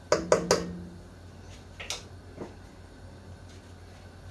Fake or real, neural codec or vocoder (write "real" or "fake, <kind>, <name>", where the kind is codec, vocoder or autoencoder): real